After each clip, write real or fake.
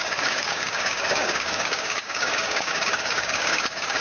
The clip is fake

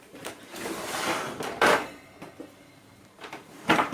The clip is fake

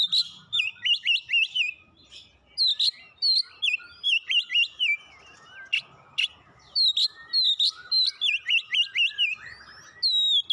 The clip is real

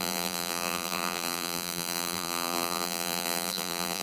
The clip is fake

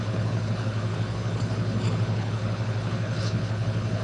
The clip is fake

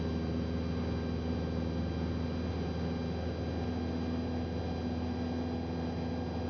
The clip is real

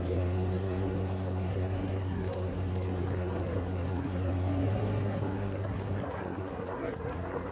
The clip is fake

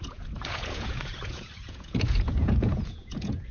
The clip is fake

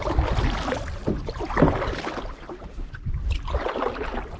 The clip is real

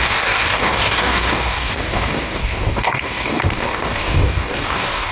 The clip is fake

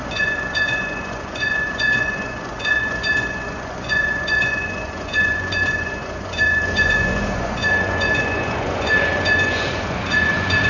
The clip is fake